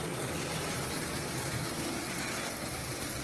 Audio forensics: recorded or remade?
recorded